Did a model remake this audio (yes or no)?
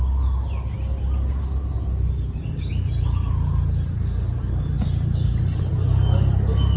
no